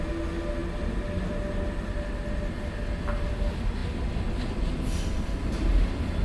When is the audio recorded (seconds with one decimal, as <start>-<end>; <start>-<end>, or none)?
0.0-6.2